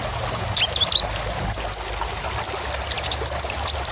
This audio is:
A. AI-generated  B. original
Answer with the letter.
B